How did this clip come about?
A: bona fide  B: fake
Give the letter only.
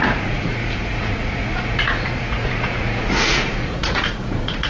B